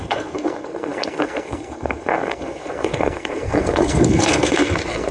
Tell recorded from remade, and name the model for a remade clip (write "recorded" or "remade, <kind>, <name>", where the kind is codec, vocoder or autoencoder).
remade, codec, SNAC